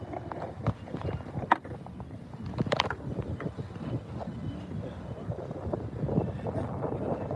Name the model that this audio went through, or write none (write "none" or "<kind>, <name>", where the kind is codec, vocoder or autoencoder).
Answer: none